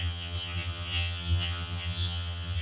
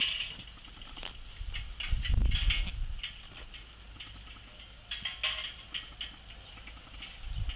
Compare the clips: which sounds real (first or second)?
second